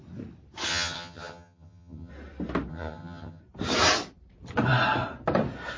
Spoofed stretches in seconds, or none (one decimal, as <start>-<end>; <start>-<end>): 0.7-2.1; 2.7-3.4